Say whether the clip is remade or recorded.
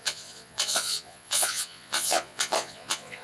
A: remade